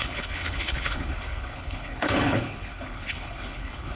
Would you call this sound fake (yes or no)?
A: yes